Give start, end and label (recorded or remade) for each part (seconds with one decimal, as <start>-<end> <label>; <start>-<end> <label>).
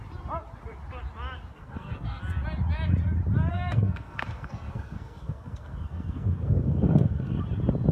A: 0.0-1.5 recorded; 1.5-2.2 remade; 2.2-3.5 recorded; 3.5-7.4 remade; 7.4-7.9 recorded